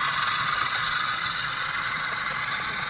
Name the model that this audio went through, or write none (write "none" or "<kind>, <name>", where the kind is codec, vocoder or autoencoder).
vocoder, Vocos